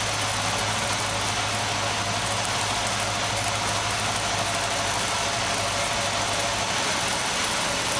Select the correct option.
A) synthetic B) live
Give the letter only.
B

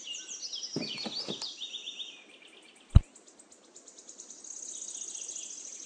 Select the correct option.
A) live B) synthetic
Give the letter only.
A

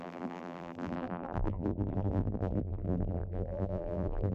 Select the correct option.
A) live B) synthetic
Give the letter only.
B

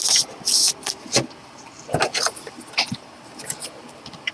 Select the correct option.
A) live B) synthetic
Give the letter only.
A